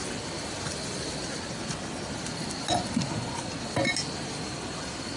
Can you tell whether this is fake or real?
real